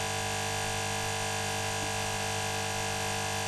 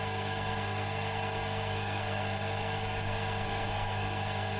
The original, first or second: first